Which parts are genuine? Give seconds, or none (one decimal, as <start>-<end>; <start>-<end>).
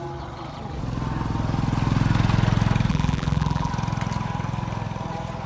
0.0-2.9; 3.7-5.5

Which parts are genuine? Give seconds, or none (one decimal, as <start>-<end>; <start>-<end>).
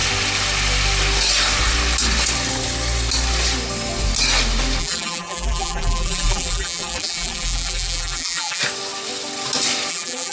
0.0-4.8; 8.6-9.9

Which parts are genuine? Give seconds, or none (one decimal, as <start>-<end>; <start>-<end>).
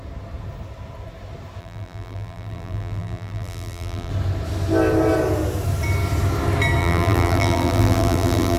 0.0-1.6; 4.1-6.8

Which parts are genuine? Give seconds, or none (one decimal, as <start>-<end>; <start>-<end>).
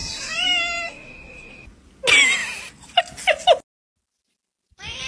1.8-2.4; 3.0-5.1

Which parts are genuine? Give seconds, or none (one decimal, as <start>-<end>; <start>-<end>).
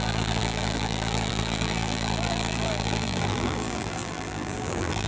none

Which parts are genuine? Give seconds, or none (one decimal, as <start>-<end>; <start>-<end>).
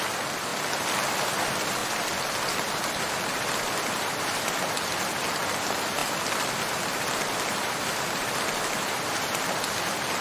1.8-3.6; 4.9-5.6